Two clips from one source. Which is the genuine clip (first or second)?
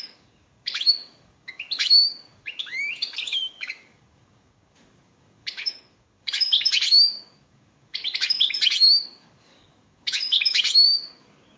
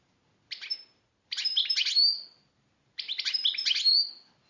second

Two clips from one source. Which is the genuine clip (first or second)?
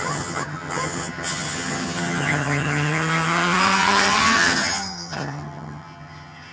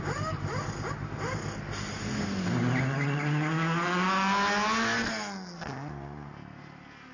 second